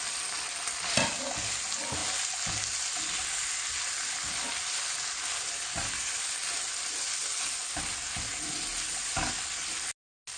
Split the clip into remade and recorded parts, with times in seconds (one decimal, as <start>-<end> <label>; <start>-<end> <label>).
0.0-10.4 recorded